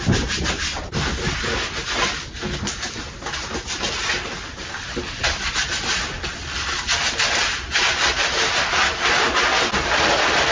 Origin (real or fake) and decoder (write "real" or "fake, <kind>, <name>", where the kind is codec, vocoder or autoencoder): real